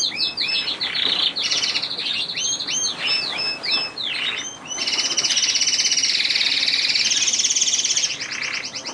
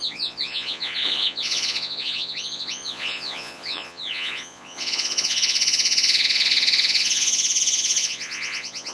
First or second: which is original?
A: first